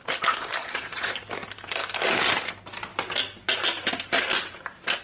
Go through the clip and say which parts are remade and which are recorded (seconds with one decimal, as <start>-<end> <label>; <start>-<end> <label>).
0.0-0.6 recorded; 0.6-1.1 remade; 1.1-5.0 recorded